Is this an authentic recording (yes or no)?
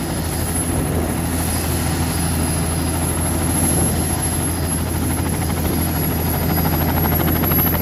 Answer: yes